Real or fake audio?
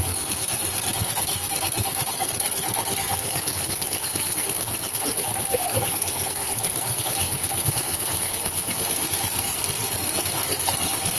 fake